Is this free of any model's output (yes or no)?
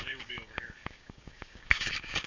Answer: no